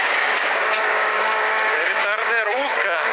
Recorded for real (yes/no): no